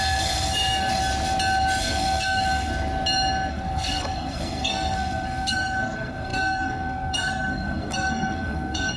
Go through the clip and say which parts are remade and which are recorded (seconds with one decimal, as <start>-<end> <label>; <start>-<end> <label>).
0.0-1.0 remade; 1.0-1.8 recorded; 1.8-2.7 remade; 2.7-3.5 recorded; 3.5-9.0 remade